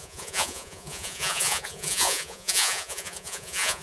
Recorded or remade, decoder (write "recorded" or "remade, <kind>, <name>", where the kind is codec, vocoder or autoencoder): remade, vocoder, Vocos